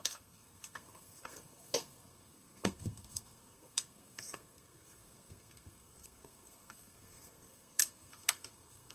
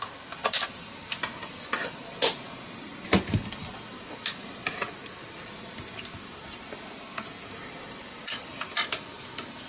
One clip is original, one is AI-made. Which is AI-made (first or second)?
first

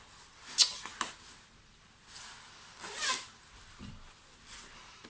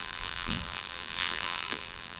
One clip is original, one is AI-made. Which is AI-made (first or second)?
second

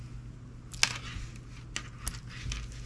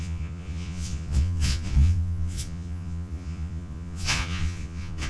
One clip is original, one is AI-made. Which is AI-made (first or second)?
second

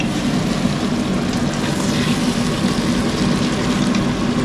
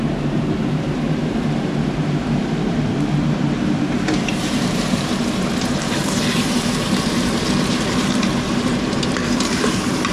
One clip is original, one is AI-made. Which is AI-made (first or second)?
second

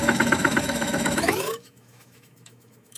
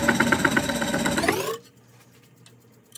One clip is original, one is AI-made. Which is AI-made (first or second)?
first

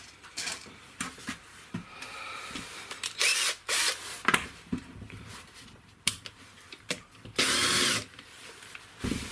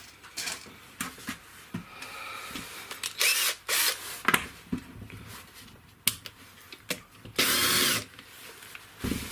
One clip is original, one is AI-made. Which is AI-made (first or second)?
first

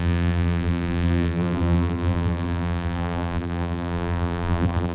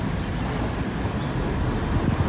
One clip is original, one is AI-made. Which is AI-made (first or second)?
first